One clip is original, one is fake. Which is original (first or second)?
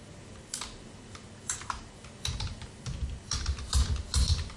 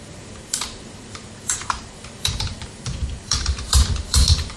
first